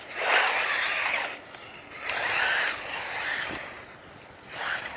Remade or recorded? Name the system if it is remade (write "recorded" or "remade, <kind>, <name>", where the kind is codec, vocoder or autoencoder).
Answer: recorded